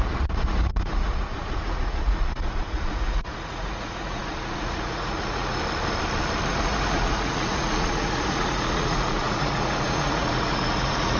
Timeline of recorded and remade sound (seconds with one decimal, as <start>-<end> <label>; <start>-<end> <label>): 0.0-5.6 remade; 5.6-6.5 recorded; 6.5-11.2 remade